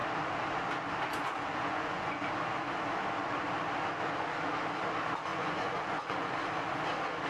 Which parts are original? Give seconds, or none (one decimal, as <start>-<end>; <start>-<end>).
0.0-1.2; 2.2-5.3; 6.3-7.3